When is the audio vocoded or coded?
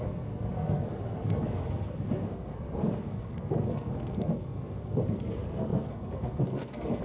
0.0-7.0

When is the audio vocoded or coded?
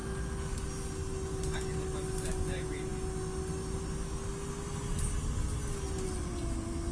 none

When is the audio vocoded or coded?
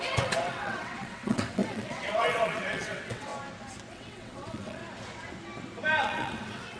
0.0-3.3; 3.9-4.8; 6.0-6.8